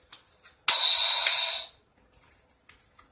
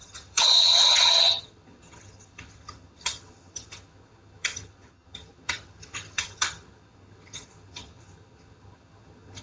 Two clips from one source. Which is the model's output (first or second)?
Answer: second